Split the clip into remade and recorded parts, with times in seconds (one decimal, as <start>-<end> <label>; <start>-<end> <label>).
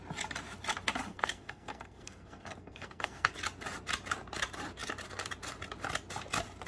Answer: 0.0-1.1 recorded; 1.1-3.3 remade; 3.3-6.7 recorded